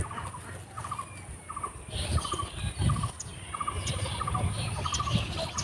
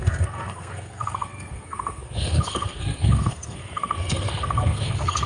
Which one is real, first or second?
first